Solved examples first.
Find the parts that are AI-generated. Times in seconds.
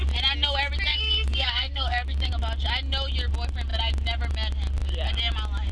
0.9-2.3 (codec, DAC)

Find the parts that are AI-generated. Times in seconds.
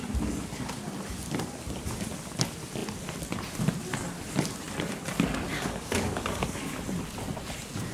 5.5-6.8 (codec, DAC)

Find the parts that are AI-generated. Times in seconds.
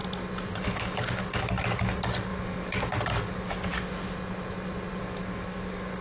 0.5-3.7 (codec, DAC); 5.0-6.0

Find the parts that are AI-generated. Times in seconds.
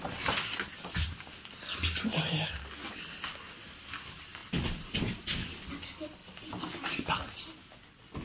none